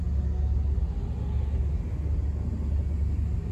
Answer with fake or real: real